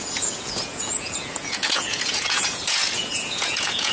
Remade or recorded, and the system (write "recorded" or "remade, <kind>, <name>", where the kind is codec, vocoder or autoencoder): remade, vocoder, Vocos